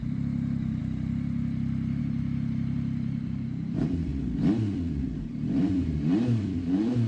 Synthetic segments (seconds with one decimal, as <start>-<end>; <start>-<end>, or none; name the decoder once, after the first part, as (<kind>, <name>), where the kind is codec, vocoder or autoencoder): 0.0-0.8 (vocoder, BigVGAN v2); 2.0-4.1; 5.0-7.1